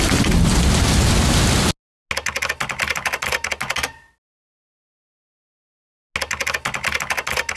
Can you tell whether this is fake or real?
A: real